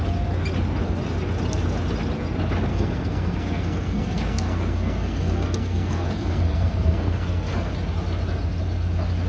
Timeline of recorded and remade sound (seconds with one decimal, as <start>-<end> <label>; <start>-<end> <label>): 0.0-2.7 recorded; 2.7-7.7 remade; 7.7-9.3 recorded